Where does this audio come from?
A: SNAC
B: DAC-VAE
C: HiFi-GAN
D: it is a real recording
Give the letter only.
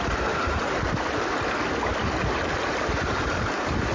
D